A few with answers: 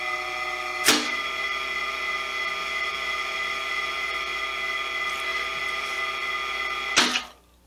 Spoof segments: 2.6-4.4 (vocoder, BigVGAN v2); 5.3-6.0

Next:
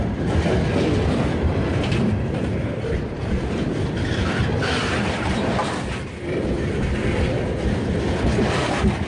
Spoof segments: 0.0-5.6 (vocoder, BigVGAN v2); 8.0-9.1

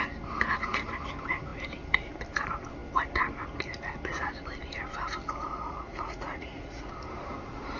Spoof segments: 5.5-6.9 (vocoder, Vocos)